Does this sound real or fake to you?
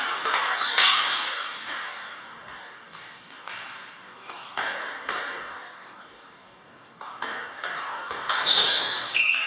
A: fake